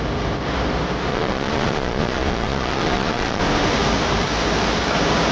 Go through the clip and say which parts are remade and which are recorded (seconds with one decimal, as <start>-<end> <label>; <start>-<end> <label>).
0.0-1.1 recorded; 1.1-3.4 remade; 3.4-5.3 recorded